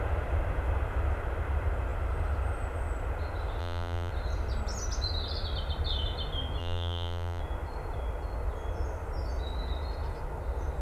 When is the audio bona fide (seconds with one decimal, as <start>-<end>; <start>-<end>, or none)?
0.0-3.6; 4.1-6.6; 7.4-10.8